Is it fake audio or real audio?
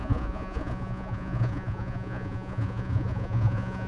fake